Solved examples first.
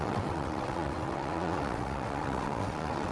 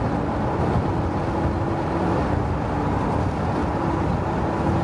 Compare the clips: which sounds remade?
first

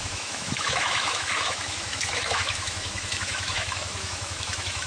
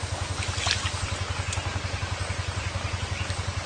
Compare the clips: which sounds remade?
first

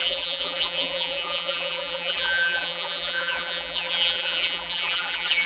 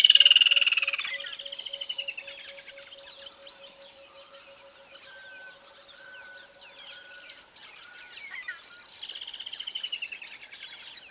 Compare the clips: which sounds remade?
first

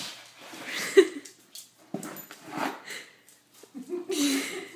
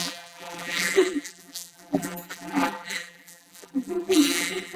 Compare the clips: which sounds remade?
second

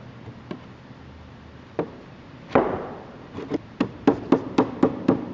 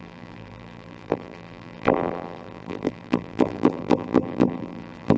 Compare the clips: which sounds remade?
second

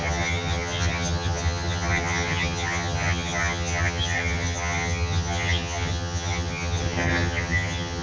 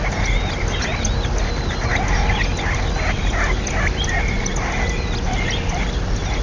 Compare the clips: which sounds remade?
first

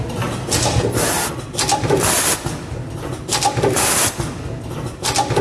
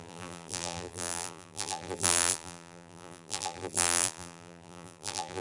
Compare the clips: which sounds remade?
second